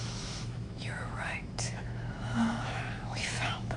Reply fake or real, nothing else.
fake